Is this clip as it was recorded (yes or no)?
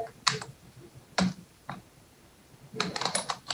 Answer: no